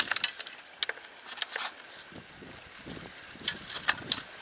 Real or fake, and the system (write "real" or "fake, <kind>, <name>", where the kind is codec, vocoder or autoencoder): real